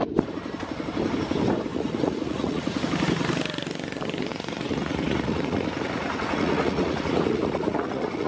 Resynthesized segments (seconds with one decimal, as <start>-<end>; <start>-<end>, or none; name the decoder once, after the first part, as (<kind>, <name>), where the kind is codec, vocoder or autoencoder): 1.7-2.8 (vocoder, Vocos); 4.3-8.3